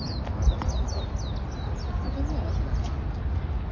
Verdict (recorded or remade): recorded